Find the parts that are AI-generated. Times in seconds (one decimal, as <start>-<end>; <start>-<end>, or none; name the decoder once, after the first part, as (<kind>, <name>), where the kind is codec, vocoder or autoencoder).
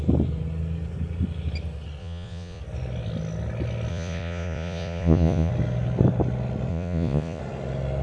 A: 2.0-2.6 (vocoder, Vocos); 3.9-5.5; 6.7-7.4